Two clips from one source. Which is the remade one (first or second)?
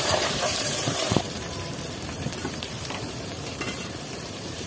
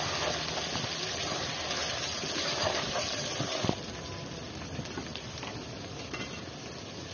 first